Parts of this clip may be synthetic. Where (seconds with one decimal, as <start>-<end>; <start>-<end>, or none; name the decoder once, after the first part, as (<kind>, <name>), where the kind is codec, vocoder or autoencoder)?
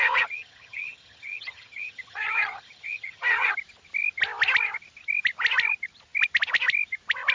0.0-3.5 (vocoder, HiFi-GAN)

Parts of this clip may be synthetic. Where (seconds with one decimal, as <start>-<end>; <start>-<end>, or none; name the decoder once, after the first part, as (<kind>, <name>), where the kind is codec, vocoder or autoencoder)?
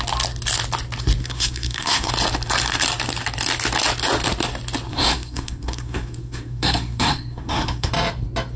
1.2-2.1 (codec, SNAC); 4.9-7.9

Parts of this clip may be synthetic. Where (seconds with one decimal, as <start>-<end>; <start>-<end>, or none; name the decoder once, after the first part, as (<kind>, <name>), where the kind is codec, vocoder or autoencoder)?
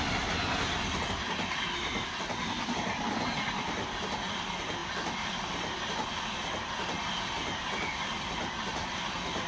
none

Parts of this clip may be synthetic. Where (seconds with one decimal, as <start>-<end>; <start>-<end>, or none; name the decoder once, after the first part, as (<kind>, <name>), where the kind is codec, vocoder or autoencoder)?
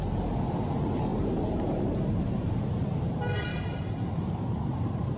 1.1-2.6 (vocoder, BigVGAN v2); 3.5-5.2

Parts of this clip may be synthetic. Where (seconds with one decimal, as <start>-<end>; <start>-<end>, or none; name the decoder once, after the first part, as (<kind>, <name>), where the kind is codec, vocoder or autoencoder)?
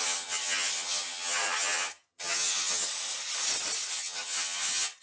0.0-2.9 (vocoder, HiFi-GAN); 3.9-5.0